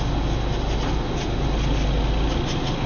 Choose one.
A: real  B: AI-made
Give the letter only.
A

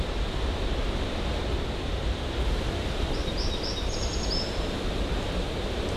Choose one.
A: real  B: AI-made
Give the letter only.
A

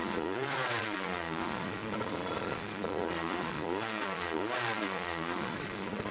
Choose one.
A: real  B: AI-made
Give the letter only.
B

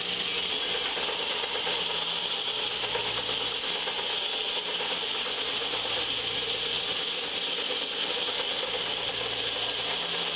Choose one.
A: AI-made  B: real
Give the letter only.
B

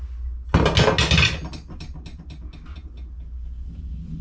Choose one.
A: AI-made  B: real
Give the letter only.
B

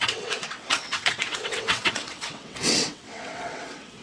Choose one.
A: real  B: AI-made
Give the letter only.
B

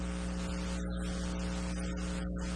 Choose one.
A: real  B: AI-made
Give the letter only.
A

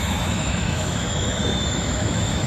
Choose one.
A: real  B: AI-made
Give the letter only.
B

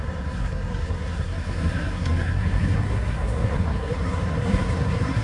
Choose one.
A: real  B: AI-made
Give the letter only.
B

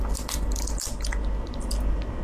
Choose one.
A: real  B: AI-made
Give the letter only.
A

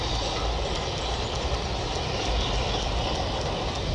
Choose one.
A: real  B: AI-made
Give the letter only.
A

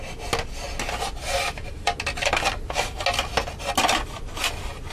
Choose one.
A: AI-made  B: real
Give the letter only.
B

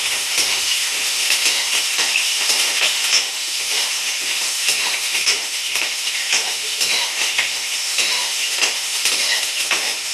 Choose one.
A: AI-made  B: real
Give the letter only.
A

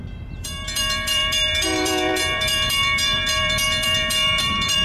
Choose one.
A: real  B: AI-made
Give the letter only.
B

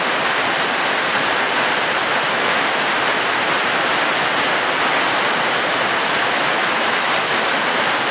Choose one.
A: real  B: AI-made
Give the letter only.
A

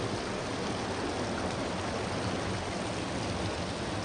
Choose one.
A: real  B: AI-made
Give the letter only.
A